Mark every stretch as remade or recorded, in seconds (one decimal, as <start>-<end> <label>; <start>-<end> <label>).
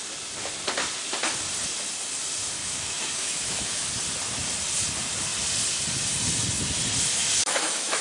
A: 0.0-2.6 recorded; 2.6-3.9 remade; 3.9-7.2 recorded; 7.2-8.0 remade